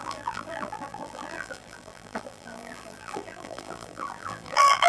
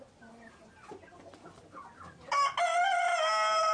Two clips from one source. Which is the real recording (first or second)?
second